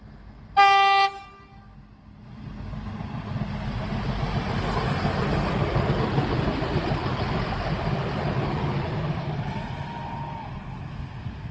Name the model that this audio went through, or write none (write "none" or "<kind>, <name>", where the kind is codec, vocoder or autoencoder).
none